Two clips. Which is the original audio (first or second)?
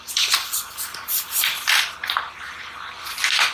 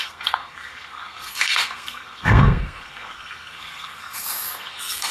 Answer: first